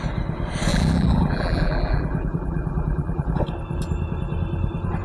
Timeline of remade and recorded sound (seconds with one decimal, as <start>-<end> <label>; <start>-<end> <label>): 0.0-0.7 recorded; 0.7-3.4 remade; 3.4-5.0 recorded